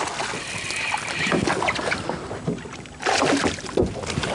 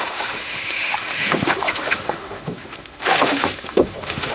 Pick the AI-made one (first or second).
second